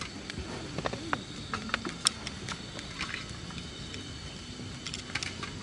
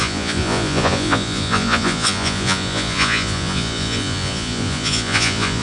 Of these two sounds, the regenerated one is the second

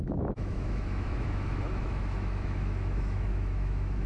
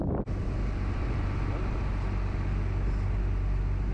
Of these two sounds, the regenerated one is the first